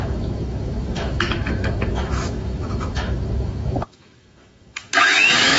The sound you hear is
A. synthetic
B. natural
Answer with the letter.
A